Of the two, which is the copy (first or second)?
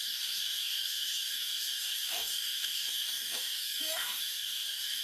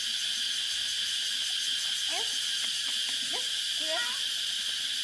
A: first